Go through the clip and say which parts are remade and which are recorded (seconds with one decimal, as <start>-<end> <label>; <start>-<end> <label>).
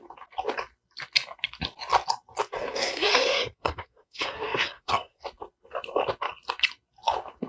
0.0-2.5 recorded; 2.5-5.2 remade; 5.2-7.5 recorded